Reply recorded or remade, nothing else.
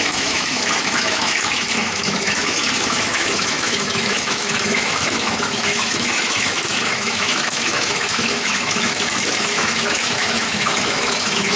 remade